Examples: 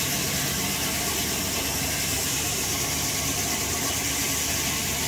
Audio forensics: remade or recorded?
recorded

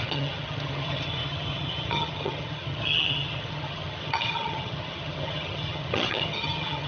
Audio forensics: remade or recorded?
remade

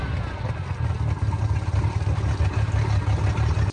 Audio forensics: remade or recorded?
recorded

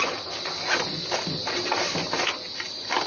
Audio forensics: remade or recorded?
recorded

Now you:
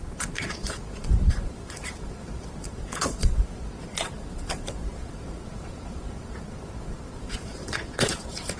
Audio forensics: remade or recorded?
remade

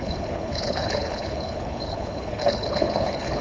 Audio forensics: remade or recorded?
remade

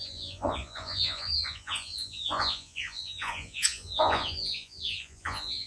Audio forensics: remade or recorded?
remade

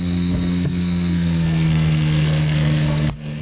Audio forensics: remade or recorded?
remade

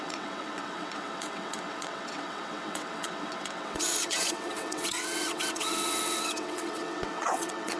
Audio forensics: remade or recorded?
remade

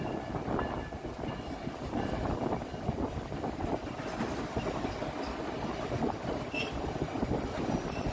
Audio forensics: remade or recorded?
recorded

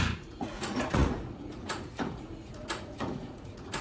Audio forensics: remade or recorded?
remade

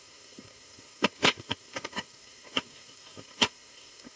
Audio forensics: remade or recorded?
remade